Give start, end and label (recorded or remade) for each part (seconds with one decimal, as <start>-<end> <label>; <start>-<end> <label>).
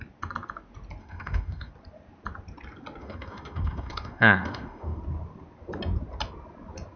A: 0.0-1.0 recorded; 1.0-1.7 remade; 1.7-3.0 recorded; 3.0-5.0 remade; 5.0-7.0 recorded